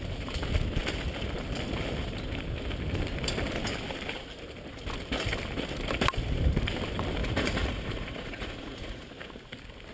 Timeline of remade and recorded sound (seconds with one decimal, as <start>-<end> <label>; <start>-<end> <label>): 0.0-7.2 recorded; 7.2-9.1 remade; 9.1-9.9 recorded